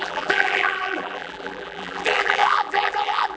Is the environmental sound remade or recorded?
remade